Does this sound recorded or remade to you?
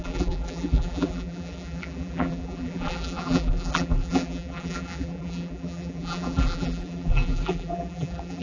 remade